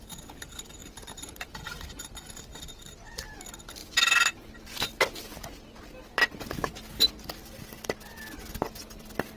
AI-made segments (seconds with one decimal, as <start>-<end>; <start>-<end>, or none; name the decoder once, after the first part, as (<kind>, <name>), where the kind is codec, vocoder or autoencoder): 0.8-2.3 (vocoder, BigVGAN v2)